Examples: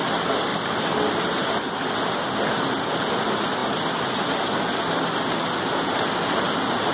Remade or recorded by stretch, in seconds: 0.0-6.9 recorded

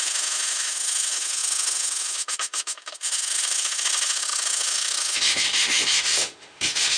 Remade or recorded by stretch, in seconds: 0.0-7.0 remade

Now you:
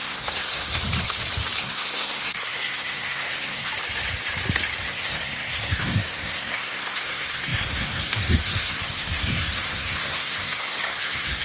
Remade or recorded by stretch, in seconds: 0.0-0.8 remade; 0.8-1.6 recorded; 1.6-3.7 remade; 3.7-4.9 recorded; 4.9-11.4 remade